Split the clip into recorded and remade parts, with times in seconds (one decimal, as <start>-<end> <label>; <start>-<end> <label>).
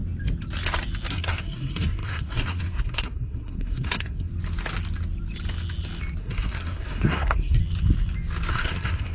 0.0-1.1 recorded; 1.1-4.3 remade; 4.3-6.2 recorded; 6.2-7.6 remade; 7.6-8.5 recorded; 8.5-9.1 remade